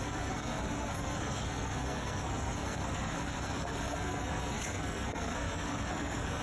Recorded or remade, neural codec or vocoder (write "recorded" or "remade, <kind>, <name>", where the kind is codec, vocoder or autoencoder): remade, codec, SNAC